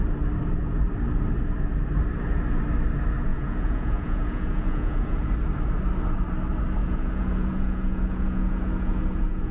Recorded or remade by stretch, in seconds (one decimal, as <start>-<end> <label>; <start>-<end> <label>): 0.0-3.3 recorded; 3.3-5.3 remade; 5.3-6.8 recorded; 6.8-9.5 remade